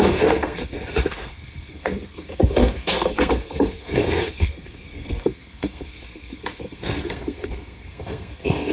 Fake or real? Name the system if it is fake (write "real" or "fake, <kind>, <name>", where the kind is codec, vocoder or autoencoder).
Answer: fake, codec, SNAC